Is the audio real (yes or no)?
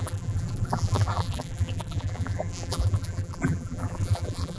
no